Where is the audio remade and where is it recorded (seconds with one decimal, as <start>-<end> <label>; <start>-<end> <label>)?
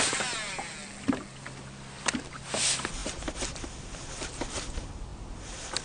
0.0-5.8 recorded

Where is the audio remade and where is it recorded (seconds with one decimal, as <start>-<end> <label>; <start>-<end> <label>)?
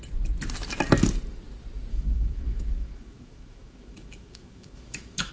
0.0-1.9 recorded; 1.9-5.3 remade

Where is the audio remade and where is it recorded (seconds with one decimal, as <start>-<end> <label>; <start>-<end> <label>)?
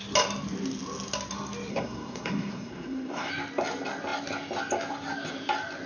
0.0-1.7 recorded; 1.7-3.3 remade; 3.3-5.9 recorded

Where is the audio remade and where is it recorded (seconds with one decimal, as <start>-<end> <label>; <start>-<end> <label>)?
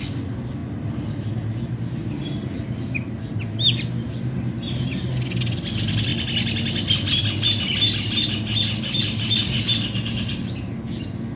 0.0-11.4 recorded